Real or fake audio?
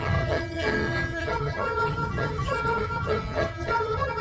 fake